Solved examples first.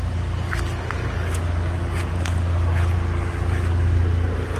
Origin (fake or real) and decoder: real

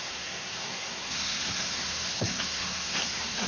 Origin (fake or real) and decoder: fake, codec, SNAC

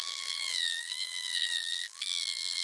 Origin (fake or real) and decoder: fake, vocoder, BigVGAN v2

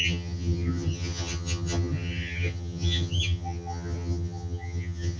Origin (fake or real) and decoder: fake, vocoder, HiFi-GAN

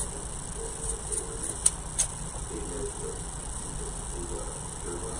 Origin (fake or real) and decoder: real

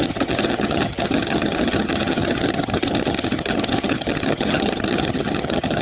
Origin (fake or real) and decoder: fake, vocoder, HiFi-GAN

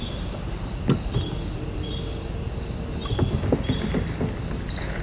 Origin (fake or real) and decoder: real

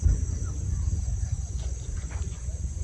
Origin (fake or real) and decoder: fake, vocoder, Vocos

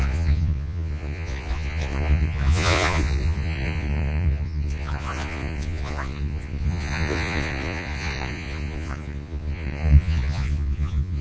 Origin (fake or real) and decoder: fake, vocoder, Vocos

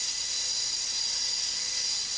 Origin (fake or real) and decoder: real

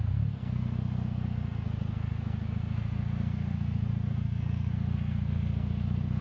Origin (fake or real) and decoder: fake, codec, SNAC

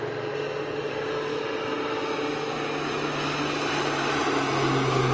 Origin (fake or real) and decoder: real